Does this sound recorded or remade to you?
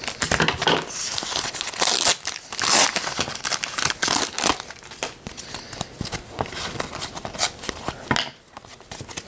recorded